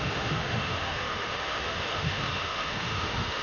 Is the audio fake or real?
fake